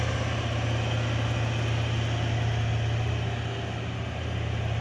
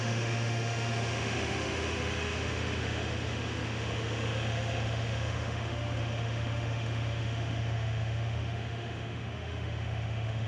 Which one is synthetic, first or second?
second